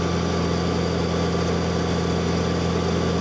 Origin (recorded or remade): recorded